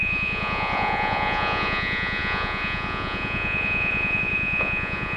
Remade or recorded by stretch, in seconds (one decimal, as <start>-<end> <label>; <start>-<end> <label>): 0.0-5.2 remade

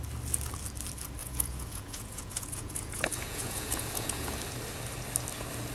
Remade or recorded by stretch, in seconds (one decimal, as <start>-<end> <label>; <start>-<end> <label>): 0.0-1.2 recorded; 1.2-4.4 remade; 4.4-5.7 recorded

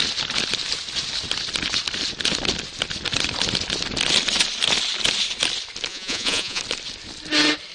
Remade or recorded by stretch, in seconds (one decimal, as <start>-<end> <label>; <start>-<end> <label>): 0.0-5.9 recorded; 5.9-6.6 remade; 6.6-7.7 recorded

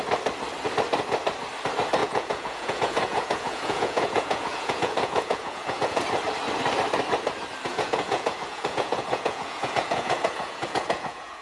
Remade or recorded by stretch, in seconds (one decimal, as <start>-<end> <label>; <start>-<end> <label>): 0.0-2.0 recorded; 2.0-6.0 remade; 6.0-7.7 recorded; 7.7-11.4 remade

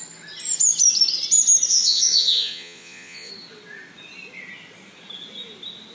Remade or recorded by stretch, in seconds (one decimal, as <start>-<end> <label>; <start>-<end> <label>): 0.0-1.7 recorded; 1.7-3.3 remade; 3.3-5.9 recorded

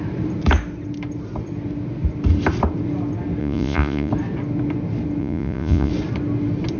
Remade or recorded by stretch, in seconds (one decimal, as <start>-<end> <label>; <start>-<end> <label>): 0.0-3.4 recorded; 3.4-4.1 remade; 4.1-5.2 recorded; 5.2-5.9 remade; 5.9-6.8 recorded